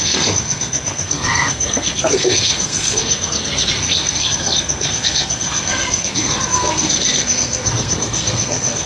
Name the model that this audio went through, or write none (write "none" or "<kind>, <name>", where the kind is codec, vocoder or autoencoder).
codec, SNAC